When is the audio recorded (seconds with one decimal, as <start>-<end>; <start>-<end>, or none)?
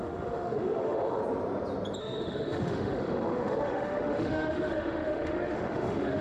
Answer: 1.2-2.0